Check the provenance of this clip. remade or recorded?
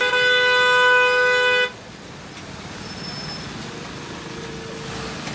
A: recorded